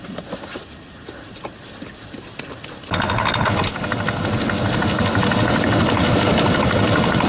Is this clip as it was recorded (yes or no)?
yes